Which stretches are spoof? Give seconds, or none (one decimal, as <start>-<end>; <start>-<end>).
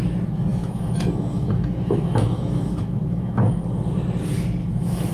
0.5-3.5; 4.6-5.1